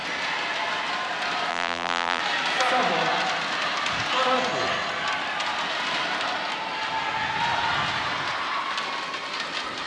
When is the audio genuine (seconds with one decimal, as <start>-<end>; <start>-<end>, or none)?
0.0-1.5; 2.2-9.9